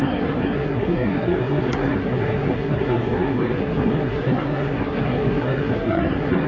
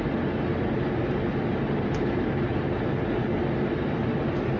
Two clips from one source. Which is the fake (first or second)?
first